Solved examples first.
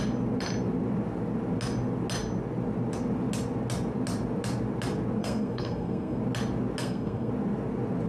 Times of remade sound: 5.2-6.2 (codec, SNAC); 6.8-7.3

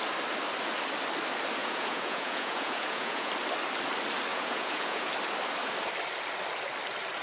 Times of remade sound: 1.6-3.3 (vocoder, Vocos); 4.3-5.1

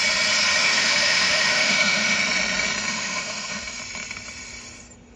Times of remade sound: 0.6-2.2 (autoencoder, DAC-VAE); 2.9-3.8

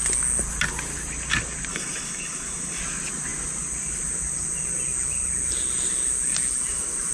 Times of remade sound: 1.7-2.8 (autoencoder, DAC-VAE)